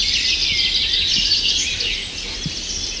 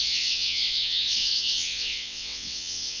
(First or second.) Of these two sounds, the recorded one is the first